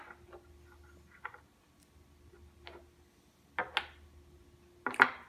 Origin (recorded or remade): recorded